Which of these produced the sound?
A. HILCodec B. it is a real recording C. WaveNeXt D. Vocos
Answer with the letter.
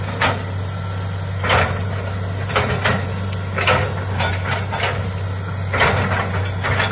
B